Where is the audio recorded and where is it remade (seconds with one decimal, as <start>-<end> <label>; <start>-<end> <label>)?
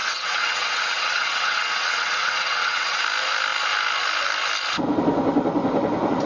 0.0-3.0 remade; 3.0-6.3 recorded